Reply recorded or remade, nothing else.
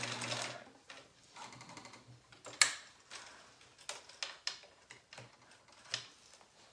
recorded